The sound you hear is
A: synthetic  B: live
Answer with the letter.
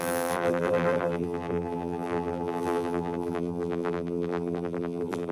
A